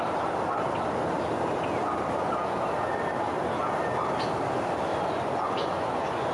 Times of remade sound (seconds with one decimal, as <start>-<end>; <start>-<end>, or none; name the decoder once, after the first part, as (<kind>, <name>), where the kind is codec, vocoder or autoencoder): 4.9-6.3 (vocoder, Vocos)